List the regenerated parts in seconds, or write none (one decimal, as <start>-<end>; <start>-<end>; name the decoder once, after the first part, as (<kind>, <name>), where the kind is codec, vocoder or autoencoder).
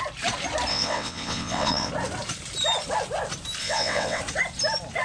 0.7-1.9 (vocoder, WaveNeXt); 3.6-4.2